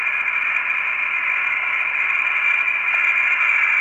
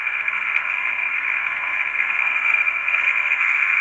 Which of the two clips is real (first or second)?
first